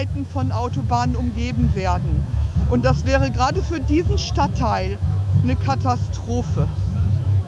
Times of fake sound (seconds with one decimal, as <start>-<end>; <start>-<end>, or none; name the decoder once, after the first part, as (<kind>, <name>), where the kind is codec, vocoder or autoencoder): 0.0-7.5 (autoencoder, DAC-VAE)